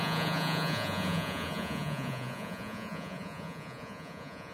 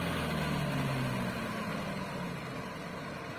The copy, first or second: first